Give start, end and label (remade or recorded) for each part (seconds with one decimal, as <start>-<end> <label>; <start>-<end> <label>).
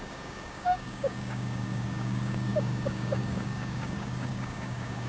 0.0-5.1 remade